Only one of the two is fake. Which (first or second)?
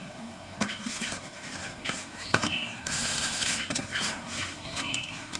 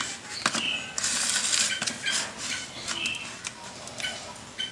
first